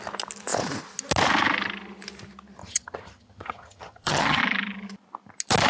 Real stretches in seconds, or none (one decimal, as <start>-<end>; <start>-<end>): 0.0-2.6; 4.4-5.7